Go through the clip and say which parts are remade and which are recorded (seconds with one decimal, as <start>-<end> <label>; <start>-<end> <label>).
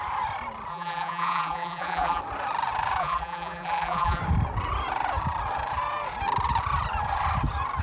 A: 0.0-0.7 recorded; 0.7-2.2 remade; 2.2-3.0 recorded; 3.0-4.2 remade; 4.2-7.8 recorded